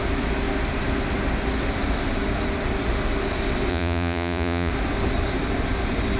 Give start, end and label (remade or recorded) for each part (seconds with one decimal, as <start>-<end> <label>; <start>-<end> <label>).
0.0-3.7 recorded; 3.7-4.7 remade; 4.7-6.2 recorded